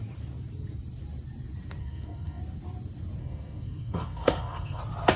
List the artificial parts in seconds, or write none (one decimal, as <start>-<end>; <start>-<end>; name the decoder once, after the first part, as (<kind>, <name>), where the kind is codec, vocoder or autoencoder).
1.8-2.4 (codec, SNAC); 3.2-4.8